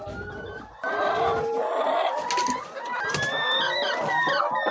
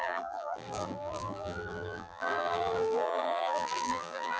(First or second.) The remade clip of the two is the second